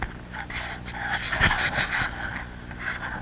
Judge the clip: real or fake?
real